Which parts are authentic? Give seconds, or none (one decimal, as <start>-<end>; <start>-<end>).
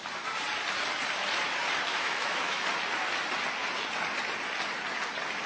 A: 0.0-1.9; 2.6-5.5